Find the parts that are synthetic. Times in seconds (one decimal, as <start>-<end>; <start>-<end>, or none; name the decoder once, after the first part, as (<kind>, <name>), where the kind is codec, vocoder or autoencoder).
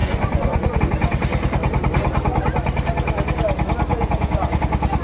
0.0-0.8 (vocoder, Vocos); 3.9-4.6